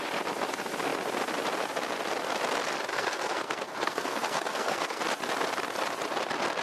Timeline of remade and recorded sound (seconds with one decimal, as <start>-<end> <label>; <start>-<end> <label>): 0.0-2.9 recorded; 2.9-5.0 remade; 5.0-6.6 recorded